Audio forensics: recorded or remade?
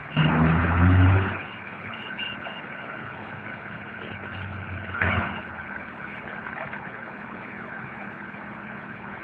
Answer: remade